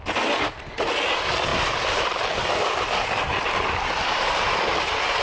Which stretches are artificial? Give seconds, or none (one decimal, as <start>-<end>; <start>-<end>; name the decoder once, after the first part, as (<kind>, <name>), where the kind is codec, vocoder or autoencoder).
1.5-4.6 (vocoder, BigVGAN v2)